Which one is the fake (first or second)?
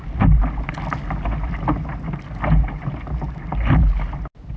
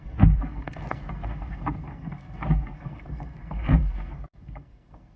second